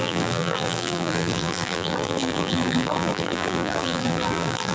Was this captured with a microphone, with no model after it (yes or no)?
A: no